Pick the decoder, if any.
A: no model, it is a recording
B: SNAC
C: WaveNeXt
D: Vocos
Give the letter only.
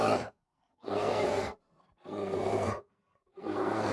B